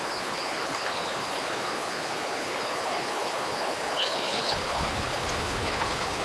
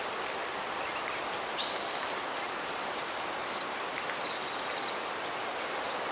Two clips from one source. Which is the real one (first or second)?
second